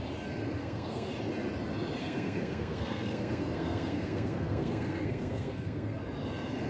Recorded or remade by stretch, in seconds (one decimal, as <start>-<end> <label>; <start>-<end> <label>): 0.0-0.6 recorded; 0.6-1.1 remade; 1.1-2.0 recorded; 2.0-6.0 remade; 6.0-6.7 recorded